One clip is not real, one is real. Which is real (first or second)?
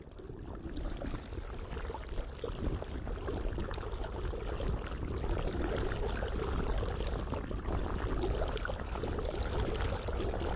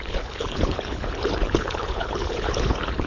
first